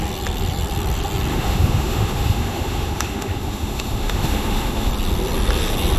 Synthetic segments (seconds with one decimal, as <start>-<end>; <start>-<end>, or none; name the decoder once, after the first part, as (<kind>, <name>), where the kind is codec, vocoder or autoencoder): 1.3-4.9 (autoencoder, DAC-VAE)